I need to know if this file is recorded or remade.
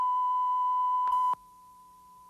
recorded